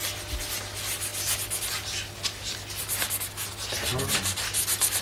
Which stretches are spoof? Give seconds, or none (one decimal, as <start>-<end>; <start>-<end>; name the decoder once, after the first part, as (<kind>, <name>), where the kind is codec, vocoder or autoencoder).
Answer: none